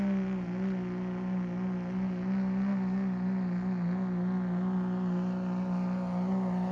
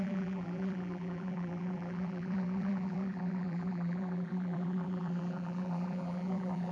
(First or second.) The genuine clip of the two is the first